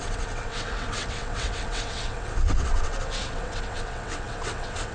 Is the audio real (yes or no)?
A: no